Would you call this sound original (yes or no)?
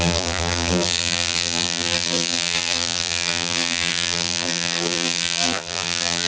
no